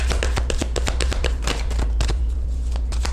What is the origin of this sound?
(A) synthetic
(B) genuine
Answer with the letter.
A